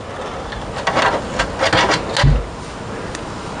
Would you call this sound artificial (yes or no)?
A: no